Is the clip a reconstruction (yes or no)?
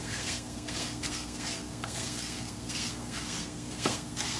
yes